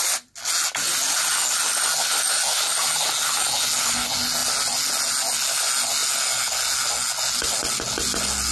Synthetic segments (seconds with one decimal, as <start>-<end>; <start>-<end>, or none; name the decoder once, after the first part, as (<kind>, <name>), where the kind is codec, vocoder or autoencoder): none